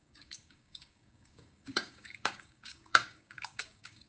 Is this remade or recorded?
remade